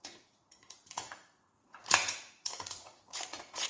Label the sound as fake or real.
fake